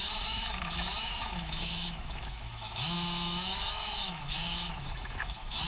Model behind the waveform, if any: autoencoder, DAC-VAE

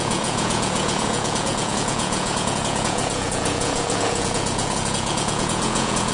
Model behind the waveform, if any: vocoder, Vocos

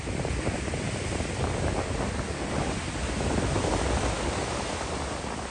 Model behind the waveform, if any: none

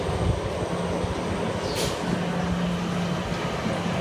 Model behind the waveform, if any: none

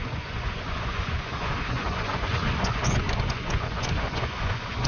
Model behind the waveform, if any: vocoder, Vocos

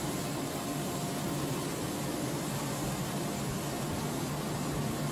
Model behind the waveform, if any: none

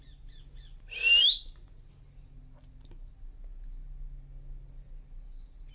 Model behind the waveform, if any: none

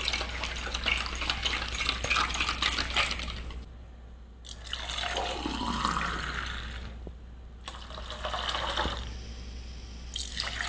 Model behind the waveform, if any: none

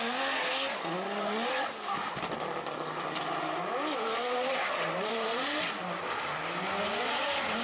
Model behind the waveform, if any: none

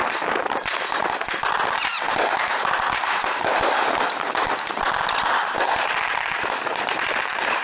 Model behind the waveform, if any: vocoder, BigVGAN v2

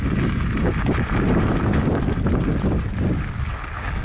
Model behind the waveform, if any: none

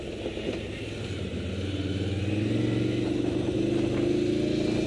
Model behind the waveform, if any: none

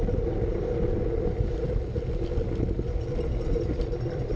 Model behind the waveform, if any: none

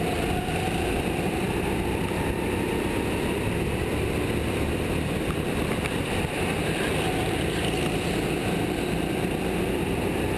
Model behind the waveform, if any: vocoder, BigVGAN v2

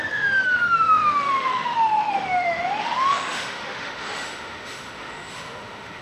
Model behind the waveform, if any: autoencoder, DAC-VAE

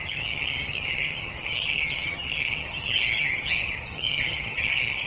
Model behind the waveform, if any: vocoder, HiFi-GAN